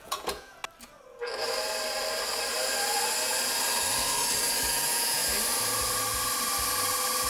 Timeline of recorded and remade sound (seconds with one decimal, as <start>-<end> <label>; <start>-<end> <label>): 0.0-0.6 remade; 0.6-4.7 recorded; 4.7-5.2 remade; 5.2-7.3 recorded